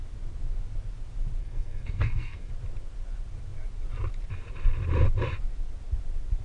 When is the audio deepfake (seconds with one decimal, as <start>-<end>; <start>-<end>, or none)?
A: 1.4-2.5